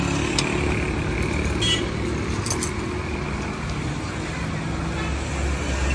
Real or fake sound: real